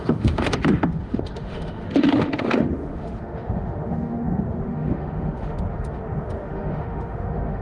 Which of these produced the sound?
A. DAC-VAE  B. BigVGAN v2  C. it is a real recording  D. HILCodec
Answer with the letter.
A